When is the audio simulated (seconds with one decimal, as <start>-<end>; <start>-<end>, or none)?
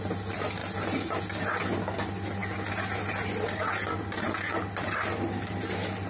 none